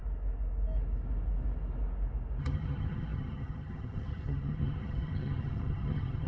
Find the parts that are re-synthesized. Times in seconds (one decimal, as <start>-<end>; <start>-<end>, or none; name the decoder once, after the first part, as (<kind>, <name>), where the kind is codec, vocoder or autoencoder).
2.4-6.3 (vocoder, HiFi-GAN)

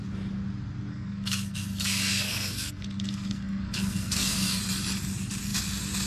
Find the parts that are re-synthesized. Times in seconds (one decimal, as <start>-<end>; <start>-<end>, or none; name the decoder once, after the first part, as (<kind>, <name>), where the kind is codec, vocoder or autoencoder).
0.9-4.6 (codec, SNAC)

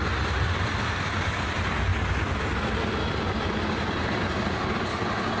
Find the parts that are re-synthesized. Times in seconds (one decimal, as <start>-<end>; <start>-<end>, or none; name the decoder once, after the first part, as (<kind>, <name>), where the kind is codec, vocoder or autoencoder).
none